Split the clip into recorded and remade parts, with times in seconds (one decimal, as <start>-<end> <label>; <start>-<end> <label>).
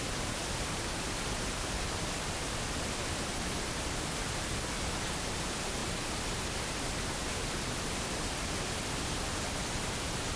0.0-10.4 recorded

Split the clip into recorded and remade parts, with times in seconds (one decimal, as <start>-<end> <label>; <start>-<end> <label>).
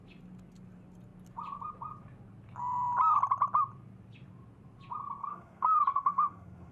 0.0-5.2 recorded; 5.2-6.7 remade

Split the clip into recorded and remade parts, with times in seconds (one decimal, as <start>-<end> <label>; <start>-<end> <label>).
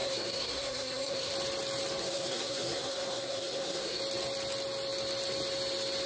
0.0-1.3 remade; 1.3-2.0 recorded; 2.0-4.0 remade; 4.0-6.1 recorded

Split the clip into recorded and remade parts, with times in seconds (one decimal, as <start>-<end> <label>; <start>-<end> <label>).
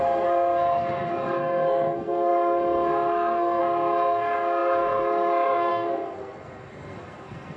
0.0-7.6 remade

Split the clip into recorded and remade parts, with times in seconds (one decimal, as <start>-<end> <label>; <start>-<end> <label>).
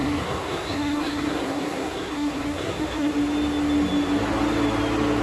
0.0-3.1 remade; 3.1-5.2 recorded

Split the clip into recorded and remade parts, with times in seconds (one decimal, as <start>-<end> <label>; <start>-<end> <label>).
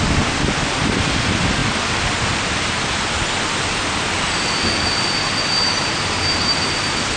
0.0-7.2 recorded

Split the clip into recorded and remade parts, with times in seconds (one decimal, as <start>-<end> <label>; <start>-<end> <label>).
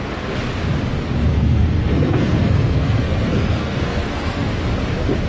0.0-1.3 recorded; 1.3-4.5 remade; 4.5-5.3 recorded